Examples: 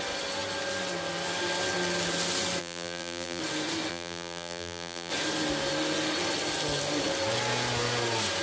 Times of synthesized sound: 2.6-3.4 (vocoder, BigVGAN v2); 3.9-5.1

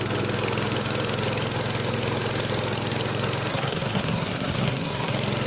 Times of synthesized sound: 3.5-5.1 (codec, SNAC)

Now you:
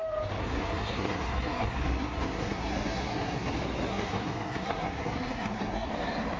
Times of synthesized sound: 0.4-3.5 (codec, SNAC); 3.9-5.9